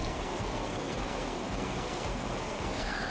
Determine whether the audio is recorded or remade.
remade